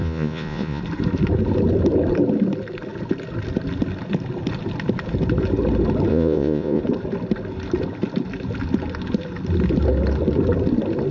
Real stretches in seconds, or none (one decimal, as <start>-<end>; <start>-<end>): 0.8-6.1; 6.8-11.1